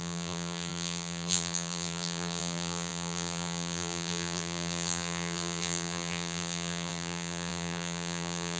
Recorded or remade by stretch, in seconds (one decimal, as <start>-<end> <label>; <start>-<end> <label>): 0.0-8.6 remade

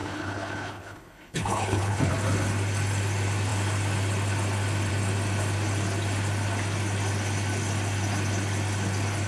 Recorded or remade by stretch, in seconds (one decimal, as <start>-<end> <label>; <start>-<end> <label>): 0.0-2.1 remade; 2.1-9.3 recorded

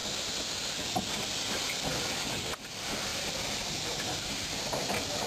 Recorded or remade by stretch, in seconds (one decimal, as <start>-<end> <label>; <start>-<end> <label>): 0.0-1.5 recorded; 1.5-1.9 remade; 1.9-2.7 recorded; 2.7-5.3 remade

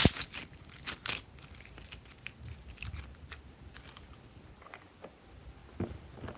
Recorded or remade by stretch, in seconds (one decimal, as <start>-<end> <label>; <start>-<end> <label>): 0.0-6.4 recorded

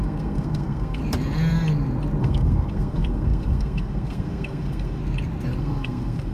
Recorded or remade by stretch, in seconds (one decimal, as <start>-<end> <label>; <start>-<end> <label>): 0.0-1.0 remade; 1.0-2.2 recorded; 2.2-5.0 remade; 5.0-5.6 recorded; 5.6-6.3 remade